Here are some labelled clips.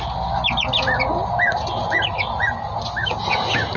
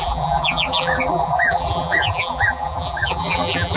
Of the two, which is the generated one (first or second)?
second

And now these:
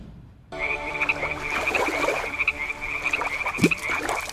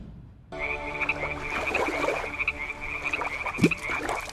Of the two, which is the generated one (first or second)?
first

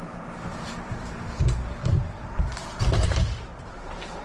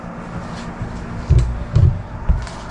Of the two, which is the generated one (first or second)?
first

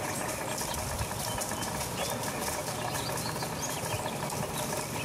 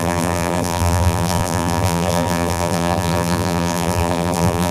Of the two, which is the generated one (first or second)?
second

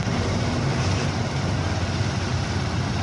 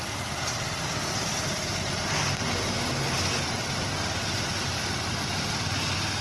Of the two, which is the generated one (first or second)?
first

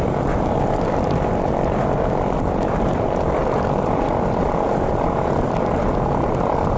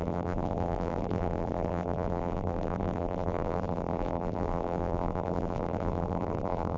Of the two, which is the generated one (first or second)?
second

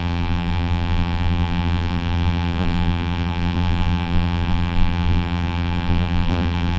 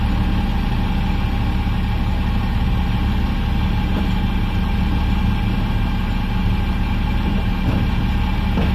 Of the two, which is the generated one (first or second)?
first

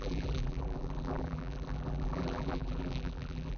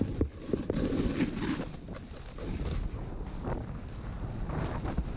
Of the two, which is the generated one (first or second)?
first